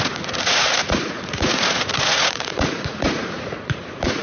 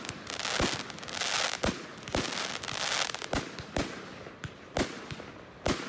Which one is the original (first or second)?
second